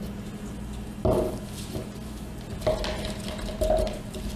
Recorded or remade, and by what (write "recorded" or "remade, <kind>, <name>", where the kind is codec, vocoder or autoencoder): recorded